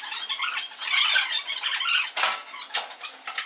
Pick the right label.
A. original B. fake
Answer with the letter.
A